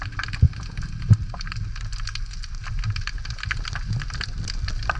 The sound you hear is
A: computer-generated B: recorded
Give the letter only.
B